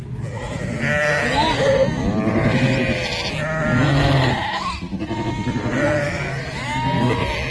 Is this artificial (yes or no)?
no